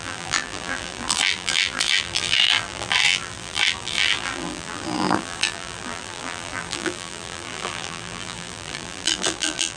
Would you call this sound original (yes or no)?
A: no